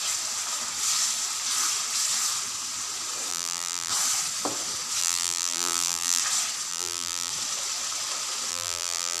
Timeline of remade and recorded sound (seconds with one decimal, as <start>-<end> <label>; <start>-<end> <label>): 0.0-3.3 recorded; 3.3-3.9 remade; 3.9-5.0 recorded; 5.0-6.2 remade; 6.2-6.7 recorded; 6.7-7.3 remade; 7.3-8.5 recorded; 8.5-9.2 remade